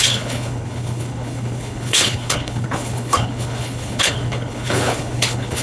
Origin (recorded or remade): remade